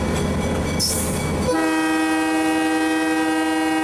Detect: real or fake real